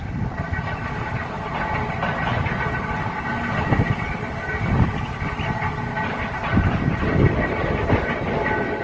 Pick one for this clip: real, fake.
real